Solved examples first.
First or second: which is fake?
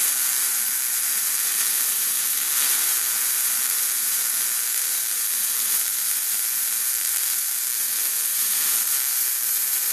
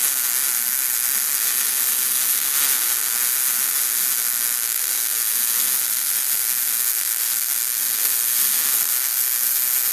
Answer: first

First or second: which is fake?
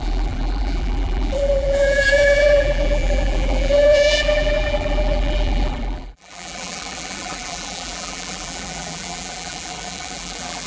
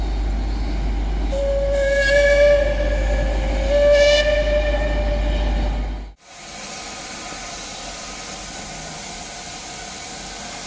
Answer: first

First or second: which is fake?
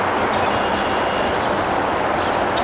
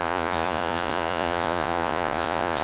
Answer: second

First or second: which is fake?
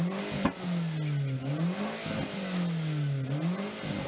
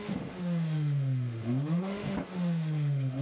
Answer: second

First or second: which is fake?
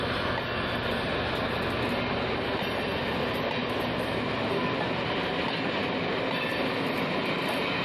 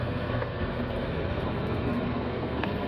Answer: second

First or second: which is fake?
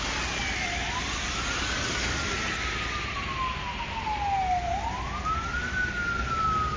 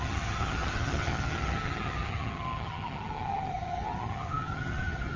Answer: second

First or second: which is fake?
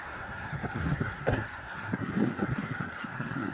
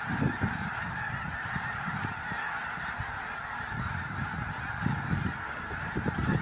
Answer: first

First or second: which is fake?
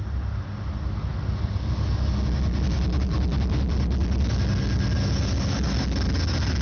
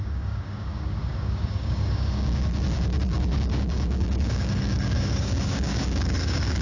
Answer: second